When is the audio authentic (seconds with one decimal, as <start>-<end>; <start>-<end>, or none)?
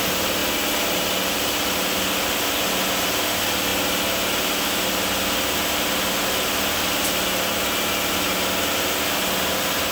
0.0-9.9